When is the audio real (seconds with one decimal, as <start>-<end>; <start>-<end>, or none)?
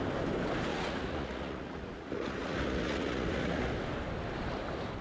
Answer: 0.0-0.7; 3.7-5.0